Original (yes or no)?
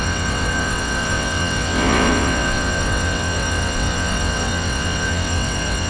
no